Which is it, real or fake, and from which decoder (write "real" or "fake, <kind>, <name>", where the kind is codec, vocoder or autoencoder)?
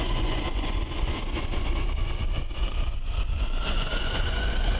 fake, vocoder, Vocos